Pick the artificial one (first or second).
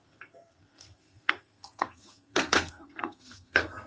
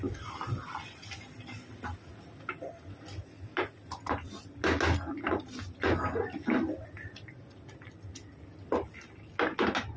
first